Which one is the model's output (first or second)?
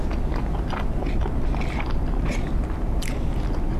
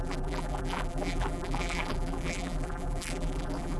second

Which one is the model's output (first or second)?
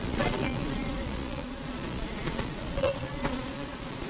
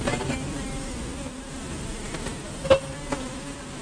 first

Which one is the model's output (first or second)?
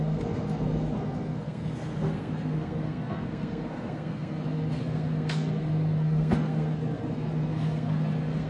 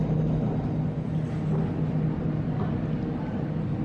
first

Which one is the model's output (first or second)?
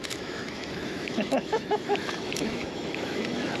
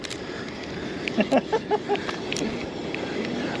first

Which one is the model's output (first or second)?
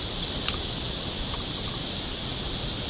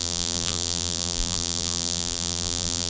second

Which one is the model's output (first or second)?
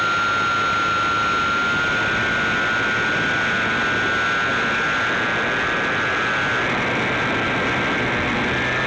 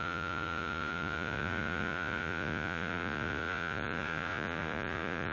second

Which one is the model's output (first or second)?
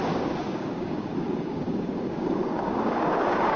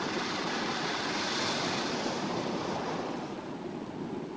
first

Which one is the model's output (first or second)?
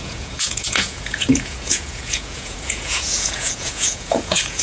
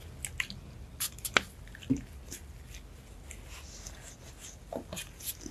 first